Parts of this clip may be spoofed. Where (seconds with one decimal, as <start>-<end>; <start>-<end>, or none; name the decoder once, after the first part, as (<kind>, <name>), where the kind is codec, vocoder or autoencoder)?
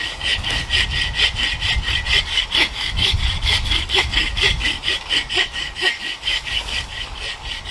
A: 0.0-0.6 (codec, DAC); 2.2-7.7